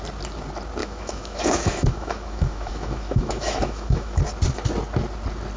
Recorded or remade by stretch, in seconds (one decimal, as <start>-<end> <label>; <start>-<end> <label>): 0.0-0.8 recorded; 0.8-4.2 remade; 4.2-5.6 recorded